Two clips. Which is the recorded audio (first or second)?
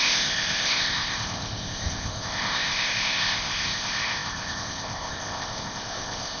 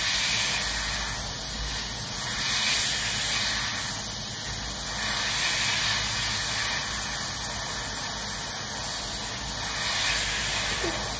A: second